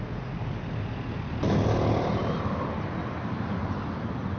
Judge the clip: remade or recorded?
recorded